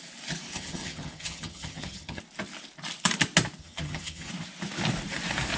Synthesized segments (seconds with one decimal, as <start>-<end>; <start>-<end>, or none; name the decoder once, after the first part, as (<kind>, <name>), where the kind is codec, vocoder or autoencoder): 0.5-2.2 (vocoder, HiFi-GAN); 3.6-4.3